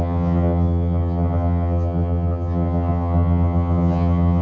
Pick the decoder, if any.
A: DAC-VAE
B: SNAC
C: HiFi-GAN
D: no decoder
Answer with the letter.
C